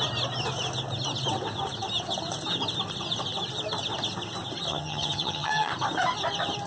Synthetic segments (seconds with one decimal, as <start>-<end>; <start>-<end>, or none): 4.7-5.7